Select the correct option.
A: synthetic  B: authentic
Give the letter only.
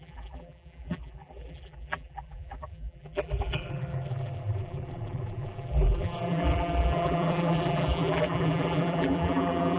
A